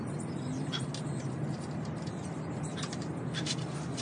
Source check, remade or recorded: recorded